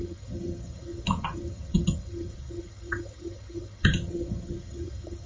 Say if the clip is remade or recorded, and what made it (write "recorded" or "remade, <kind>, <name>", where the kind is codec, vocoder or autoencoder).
remade, vocoder, HiFi-GAN